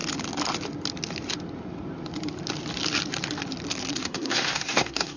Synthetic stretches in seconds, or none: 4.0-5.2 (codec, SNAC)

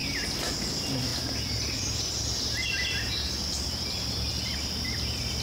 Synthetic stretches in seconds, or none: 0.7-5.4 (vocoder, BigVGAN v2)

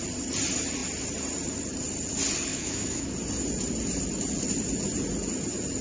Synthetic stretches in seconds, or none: 2.5-3.1 (autoencoder, DAC-VAE)

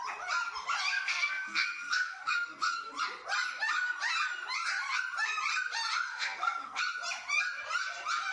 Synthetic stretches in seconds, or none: 0.9-2.9 (codec, SNAC); 6.1-6.8

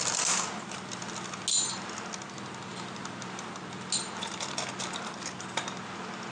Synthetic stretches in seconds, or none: none

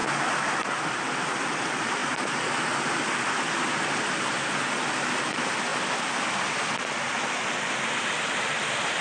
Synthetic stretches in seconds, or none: none

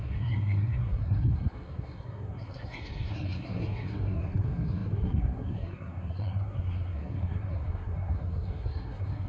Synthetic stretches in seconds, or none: 0.0-9.3 (codec, SNAC)